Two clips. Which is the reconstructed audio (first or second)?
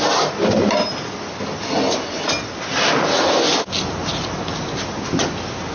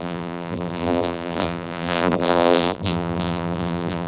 second